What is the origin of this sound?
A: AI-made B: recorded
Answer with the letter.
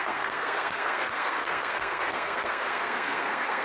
A